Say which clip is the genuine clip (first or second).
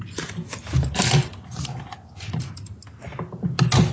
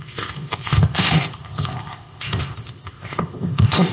first